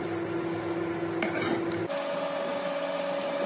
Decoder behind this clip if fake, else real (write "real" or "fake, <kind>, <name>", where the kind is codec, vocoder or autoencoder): real